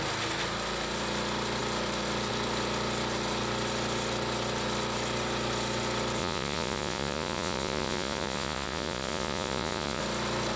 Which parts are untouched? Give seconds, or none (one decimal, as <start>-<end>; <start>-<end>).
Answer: 0.0-6.2; 10.0-10.6